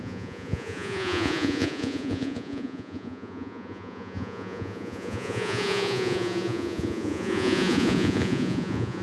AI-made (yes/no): yes